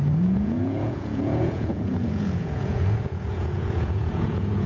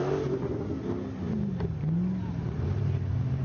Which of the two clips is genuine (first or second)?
second